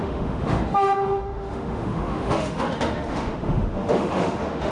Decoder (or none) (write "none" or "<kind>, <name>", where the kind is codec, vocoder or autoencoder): autoencoder, DAC-VAE